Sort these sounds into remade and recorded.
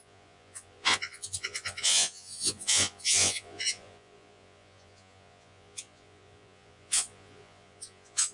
remade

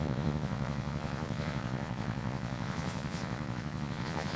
remade